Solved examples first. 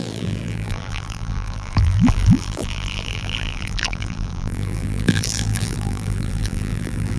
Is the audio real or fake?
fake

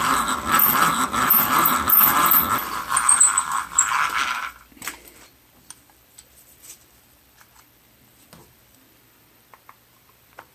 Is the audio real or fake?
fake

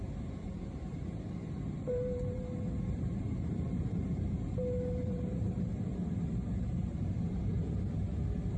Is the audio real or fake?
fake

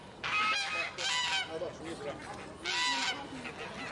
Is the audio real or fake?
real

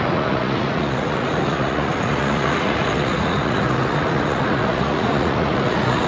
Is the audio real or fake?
fake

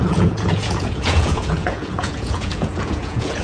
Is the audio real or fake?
fake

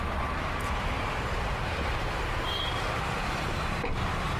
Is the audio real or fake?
real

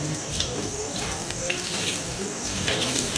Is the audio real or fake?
fake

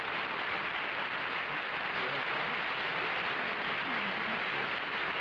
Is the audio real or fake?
real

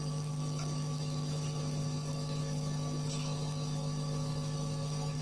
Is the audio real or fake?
fake